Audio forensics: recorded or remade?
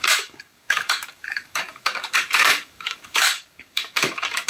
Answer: remade